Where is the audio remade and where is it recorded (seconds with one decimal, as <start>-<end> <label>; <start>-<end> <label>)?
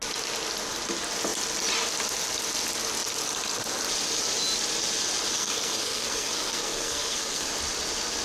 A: 0.0-5.3 recorded; 5.3-7.5 remade; 7.5-8.2 recorded